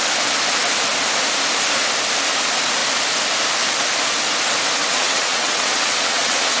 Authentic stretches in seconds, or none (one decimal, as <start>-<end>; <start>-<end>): 0.0-4.8